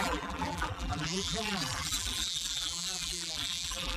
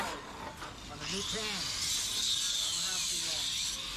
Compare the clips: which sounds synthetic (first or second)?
first